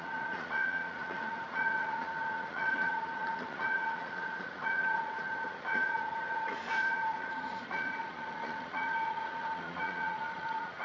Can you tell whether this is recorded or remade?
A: remade